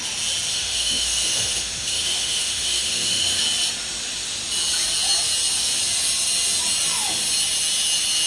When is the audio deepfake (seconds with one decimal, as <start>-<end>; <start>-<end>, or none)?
0.5-3.4